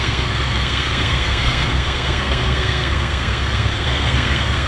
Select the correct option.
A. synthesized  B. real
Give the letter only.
A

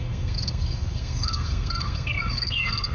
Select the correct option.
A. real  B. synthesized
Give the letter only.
B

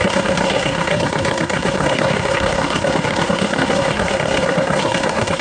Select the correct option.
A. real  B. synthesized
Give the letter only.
B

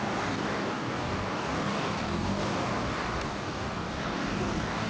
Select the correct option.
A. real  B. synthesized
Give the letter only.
B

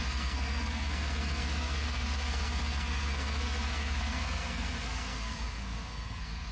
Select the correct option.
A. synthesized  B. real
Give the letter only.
A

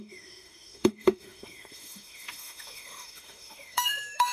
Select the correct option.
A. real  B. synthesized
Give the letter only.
B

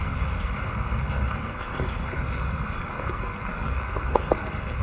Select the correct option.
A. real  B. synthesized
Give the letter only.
B